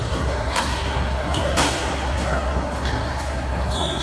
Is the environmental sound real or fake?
fake